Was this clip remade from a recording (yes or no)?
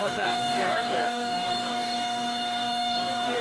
yes